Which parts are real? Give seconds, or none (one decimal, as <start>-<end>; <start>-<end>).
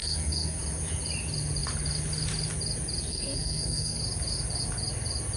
0.6-3.1; 4.0-5.4